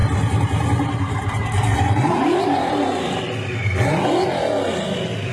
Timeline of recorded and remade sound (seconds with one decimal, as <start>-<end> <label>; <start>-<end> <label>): 0.0-3.2 remade; 3.2-5.3 recorded